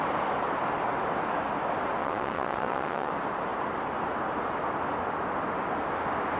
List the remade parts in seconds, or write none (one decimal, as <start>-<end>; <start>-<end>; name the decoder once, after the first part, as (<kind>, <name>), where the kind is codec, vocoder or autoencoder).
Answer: 2.0-3.1 (vocoder, WaveNeXt)